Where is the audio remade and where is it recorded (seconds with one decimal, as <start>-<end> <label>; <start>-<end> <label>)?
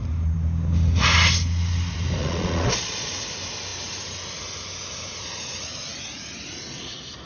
0.0-2.2 recorded; 2.2-3.1 remade; 3.1-7.3 recorded